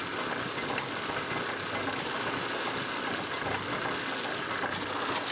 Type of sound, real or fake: real